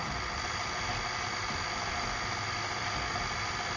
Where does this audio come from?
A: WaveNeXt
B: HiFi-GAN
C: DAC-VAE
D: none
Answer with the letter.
D